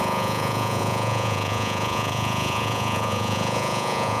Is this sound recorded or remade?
remade